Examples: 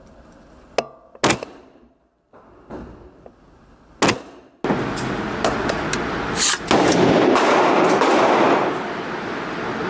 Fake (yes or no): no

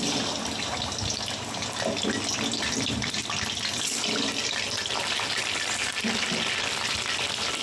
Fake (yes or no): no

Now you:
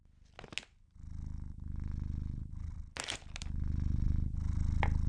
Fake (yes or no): no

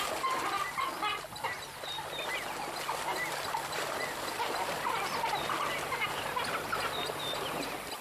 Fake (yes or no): no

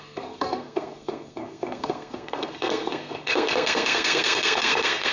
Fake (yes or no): yes